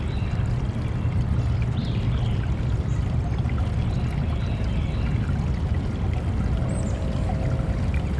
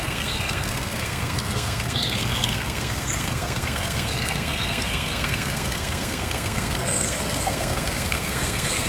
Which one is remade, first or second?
second